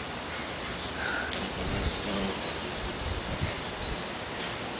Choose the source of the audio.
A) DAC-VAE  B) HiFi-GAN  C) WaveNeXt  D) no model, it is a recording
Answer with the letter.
D